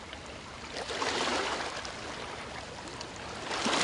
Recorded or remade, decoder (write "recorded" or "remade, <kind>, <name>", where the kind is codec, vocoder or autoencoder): recorded